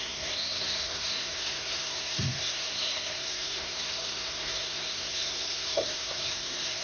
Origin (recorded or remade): remade